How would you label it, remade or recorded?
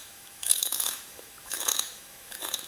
remade